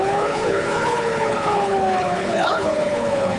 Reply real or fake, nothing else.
fake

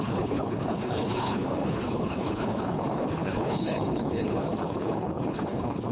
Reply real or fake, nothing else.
fake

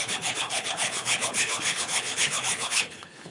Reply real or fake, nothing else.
fake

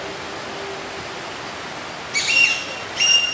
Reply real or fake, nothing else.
real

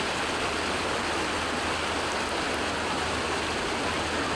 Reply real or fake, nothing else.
real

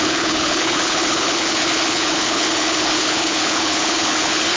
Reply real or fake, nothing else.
fake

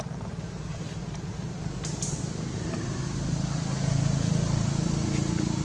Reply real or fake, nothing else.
real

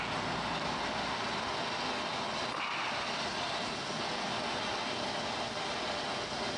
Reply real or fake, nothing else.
real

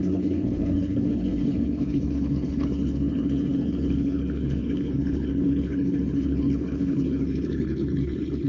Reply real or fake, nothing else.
fake